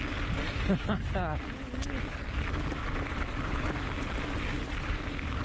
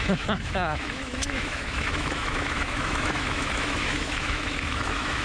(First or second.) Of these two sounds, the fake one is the second